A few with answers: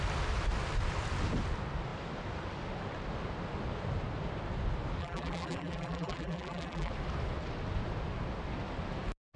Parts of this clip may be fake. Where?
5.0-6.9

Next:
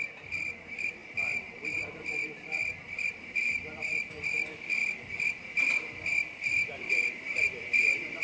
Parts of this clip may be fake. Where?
0.0-4.8; 6.1-8.2

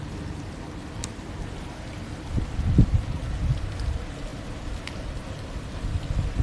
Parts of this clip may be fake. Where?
none

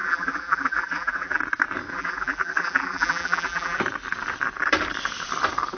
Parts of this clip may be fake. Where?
0.0-1.4; 1.9-3.8

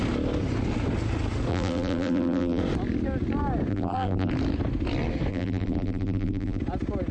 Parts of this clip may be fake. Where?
1.5-2.6; 3.7-4.3; 5.3-6.6

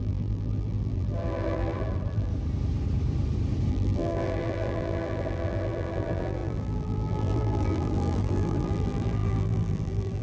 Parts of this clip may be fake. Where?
0.0-2.3; 3.7-10.2

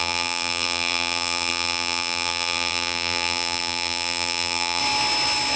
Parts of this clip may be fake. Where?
0.0-4.8